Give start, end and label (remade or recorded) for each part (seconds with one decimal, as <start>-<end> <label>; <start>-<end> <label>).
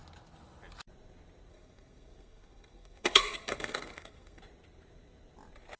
0.0-1.5 recorded; 1.5-4.4 remade; 4.4-5.8 recorded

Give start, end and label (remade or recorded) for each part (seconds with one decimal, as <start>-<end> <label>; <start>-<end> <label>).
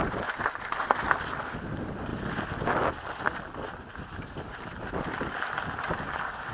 0.0-6.5 recorded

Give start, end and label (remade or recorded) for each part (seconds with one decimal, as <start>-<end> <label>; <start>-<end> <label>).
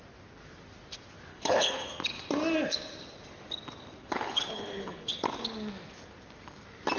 0.0-1.3 recorded; 1.3-1.9 remade; 1.9-4.0 recorded; 4.0-5.1 remade; 5.1-7.0 recorded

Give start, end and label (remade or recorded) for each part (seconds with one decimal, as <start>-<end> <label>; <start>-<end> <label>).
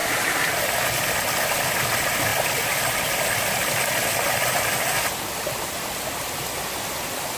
0.0-0.5 remade; 0.5-7.4 recorded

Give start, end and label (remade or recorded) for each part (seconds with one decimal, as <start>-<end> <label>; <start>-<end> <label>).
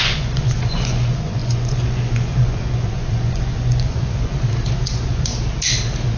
0.0-4.3 remade; 4.3-4.8 recorded; 4.8-5.3 remade; 5.3-6.2 recorded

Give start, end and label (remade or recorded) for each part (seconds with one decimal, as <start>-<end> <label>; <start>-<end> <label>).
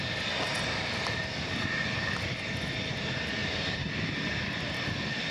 0.0-3.4 recorded; 3.4-3.9 remade; 3.9-5.3 recorded